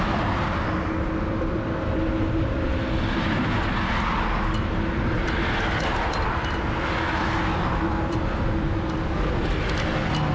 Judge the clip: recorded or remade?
recorded